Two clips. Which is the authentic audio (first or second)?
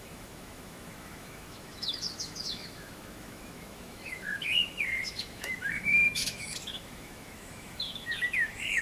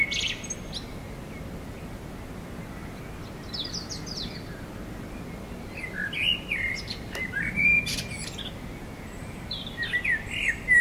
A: second